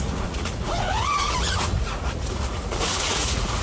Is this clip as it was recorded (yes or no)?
no